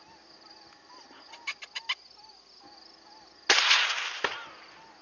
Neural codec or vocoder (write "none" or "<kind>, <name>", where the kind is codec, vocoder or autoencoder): none